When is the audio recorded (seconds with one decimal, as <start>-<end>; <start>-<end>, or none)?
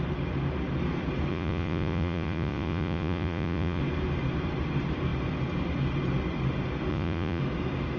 0.0-1.3; 3.8-6.9; 7.4-8.0